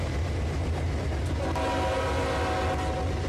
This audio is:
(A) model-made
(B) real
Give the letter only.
B